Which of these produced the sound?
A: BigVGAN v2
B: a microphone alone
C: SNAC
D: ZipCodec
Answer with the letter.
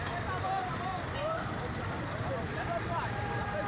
A